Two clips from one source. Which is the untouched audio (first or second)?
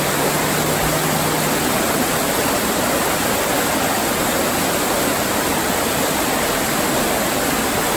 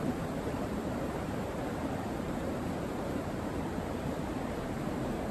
first